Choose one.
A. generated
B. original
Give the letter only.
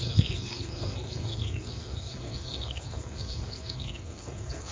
A